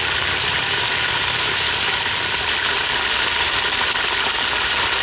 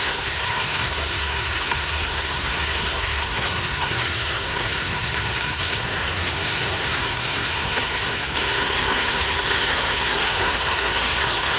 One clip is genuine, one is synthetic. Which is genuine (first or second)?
first